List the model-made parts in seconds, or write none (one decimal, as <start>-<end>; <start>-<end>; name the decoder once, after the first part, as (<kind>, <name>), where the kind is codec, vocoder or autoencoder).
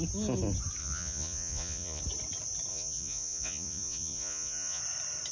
0.8-2.0 (vocoder, Vocos); 2.7-4.8